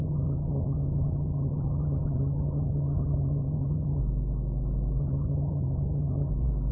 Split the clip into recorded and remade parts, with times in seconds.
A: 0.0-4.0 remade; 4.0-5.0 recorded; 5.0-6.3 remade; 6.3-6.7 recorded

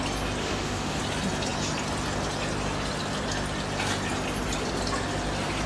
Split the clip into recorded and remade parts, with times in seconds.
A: 0.0-0.4 recorded; 0.4-1.0 remade; 1.0-5.7 recorded

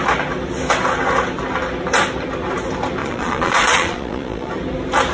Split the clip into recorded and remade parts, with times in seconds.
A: 0.0-3.0 recorded; 3.0-4.5 remade; 4.5-5.1 recorded